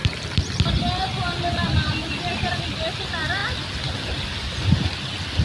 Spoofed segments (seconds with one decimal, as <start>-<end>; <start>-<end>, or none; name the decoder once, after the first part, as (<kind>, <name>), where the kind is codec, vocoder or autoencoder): none